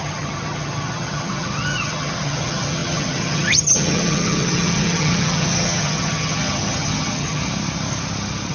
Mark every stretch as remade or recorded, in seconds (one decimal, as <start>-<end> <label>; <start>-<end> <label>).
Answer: 0.0-7.4 remade; 7.4-8.5 recorded